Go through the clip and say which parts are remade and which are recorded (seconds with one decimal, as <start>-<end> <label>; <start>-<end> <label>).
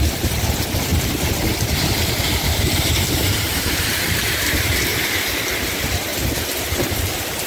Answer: 0.0-4.9 remade; 4.9-5.6 recorded; 5.6-7.5 remade